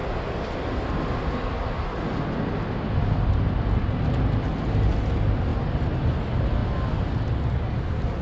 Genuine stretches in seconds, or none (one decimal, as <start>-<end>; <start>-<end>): 0.0-8.2